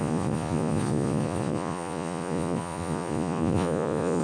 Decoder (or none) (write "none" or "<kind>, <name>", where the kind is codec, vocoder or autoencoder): vocoder, Vocos